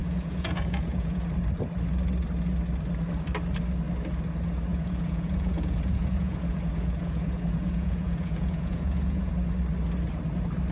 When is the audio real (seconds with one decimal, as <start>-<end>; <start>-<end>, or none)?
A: 1.3-4.7; 9.3-10.7